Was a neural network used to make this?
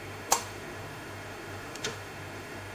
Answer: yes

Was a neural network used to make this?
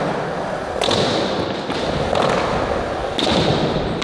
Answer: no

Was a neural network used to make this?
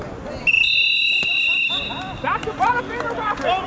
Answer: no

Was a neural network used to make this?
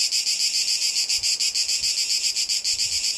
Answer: no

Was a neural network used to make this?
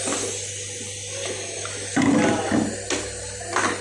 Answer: no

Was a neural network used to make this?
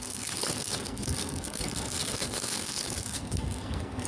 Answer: yes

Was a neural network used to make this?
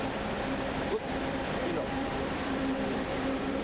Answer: yes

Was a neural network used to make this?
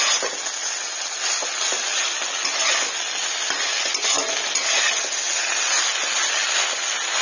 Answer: no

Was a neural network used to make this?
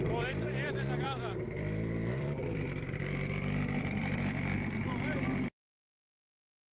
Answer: yes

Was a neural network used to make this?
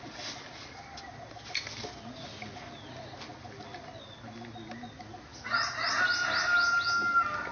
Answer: no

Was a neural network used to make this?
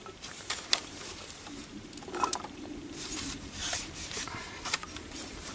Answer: yes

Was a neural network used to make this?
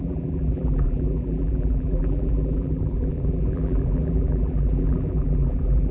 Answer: yes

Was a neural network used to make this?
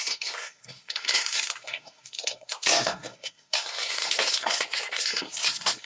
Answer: yes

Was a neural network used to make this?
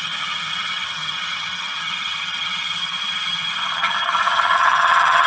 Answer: yes